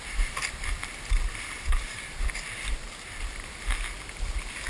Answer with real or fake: real